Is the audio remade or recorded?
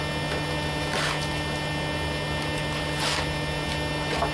recorded